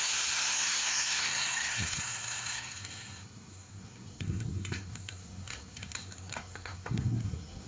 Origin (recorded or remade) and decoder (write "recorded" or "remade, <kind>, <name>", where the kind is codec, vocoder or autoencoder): remade, codec, SNAC